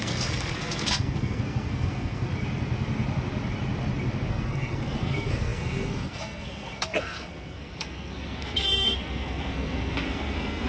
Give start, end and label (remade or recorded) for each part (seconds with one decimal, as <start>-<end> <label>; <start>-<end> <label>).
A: 0.0-2.3 remade; 2.3-4.3 recorded; 4.3-10.7 remade